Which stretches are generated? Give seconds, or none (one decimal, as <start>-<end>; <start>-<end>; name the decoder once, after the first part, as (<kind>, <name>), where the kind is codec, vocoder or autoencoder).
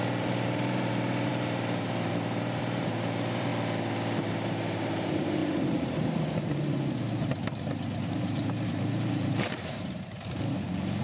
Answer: 0.0-3.5 (vocoder, BigVGAN v2); 4.3-11.0